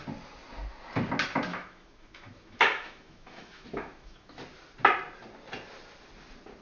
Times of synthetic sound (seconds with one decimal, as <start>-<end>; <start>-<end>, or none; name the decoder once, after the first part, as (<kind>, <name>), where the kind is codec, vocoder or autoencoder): 1.5-4.4 (autoencoder, DAC-VAE)